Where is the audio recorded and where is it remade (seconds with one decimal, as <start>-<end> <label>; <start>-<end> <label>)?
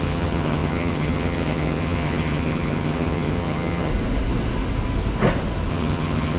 0.0-3.9 remade; 3.9-5.7 recorded; 5.7-6.4 remade